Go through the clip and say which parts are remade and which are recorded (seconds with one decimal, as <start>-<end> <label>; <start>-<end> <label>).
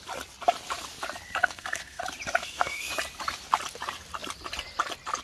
0.0-1.4 recorded; 1.4-2.0 remade; 2.0-2.4 recorded; 2.4-2.9 remade; 2.9-5.2 recorded